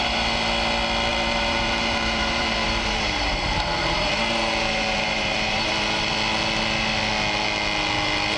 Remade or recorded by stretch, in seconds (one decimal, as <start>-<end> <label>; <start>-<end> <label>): 0.0-1.1 recorded; 1.1-6.1 remade; 6.1-8.4 recorded